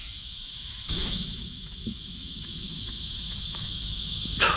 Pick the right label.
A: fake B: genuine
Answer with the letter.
A